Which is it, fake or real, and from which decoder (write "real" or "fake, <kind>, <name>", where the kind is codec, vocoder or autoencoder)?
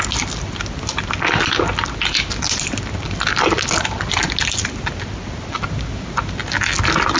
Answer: real